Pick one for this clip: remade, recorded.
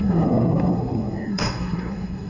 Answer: remade